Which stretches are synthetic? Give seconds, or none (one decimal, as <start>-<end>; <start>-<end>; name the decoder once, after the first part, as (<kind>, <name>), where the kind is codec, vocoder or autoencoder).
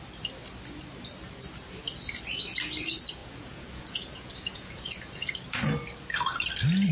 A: 3.2-5.3 (vocoder, Vocos)